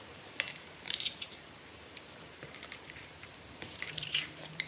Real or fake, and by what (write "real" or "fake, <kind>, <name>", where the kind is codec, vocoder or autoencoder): fake, vocoder, BigVGAN v2